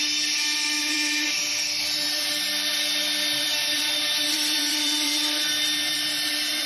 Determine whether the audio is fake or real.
fake